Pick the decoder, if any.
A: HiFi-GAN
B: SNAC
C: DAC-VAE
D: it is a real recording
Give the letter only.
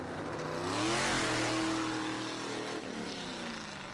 D